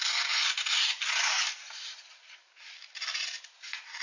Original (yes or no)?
yes